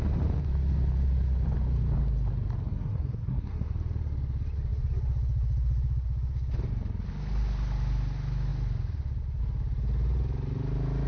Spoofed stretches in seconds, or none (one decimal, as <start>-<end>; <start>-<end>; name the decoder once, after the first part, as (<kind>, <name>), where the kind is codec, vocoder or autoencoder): 2.7-3.7 (codec, SNAC)